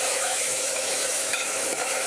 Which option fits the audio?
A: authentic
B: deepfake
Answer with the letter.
B